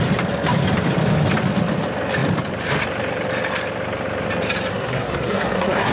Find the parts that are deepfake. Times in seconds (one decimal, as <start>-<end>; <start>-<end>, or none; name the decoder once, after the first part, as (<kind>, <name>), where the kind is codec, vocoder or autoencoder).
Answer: 4.7-5.9 (codec, SNAC)